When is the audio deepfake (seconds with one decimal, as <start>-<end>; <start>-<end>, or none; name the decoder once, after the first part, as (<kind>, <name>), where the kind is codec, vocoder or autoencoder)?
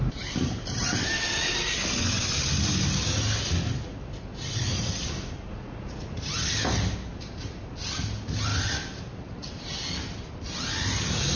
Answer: 5.5-6.2 (vocoder, Vocos)